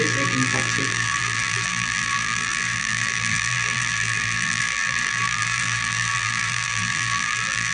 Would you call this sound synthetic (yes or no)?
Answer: yes